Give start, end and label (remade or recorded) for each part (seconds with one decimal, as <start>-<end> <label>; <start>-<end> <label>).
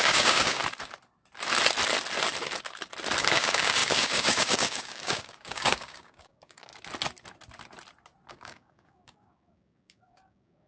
0.0-0.6 remade; 0.6-3.2 recorded; 3.2-6.7 remade; 6.7-8.3 recorded; 8.3-10.7 remade